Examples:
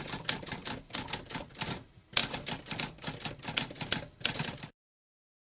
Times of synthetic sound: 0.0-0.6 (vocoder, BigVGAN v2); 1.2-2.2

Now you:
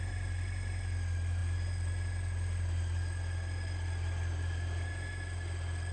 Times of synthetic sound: none

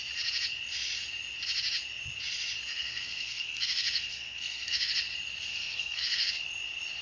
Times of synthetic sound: 2.7-4.9 (codec, SNAC); 5.5-6.3